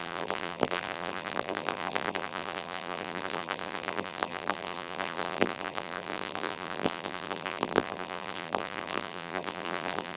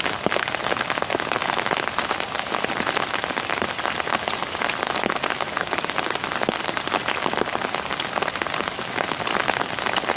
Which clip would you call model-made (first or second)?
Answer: first